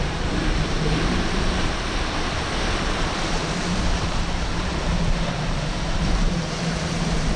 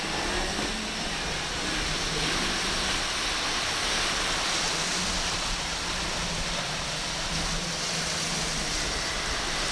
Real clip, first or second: second